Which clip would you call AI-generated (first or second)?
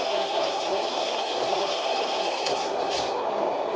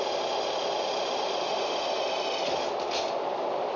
first